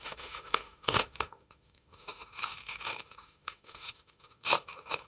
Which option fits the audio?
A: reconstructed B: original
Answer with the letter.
A